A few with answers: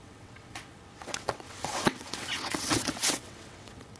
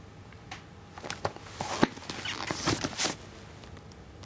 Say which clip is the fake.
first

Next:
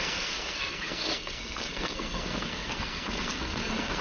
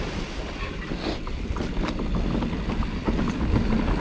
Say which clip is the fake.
first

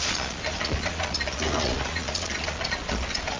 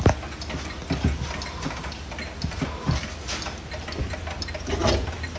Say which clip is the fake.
first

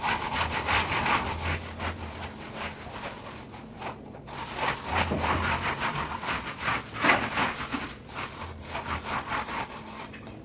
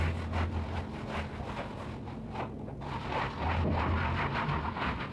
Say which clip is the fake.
first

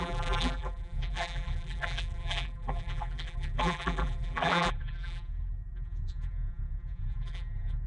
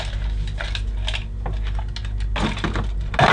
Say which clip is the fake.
first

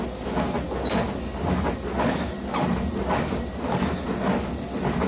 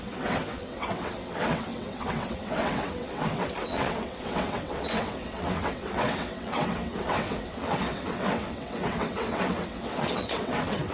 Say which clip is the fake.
second